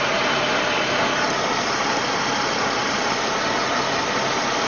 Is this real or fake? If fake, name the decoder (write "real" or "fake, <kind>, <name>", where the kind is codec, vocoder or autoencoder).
real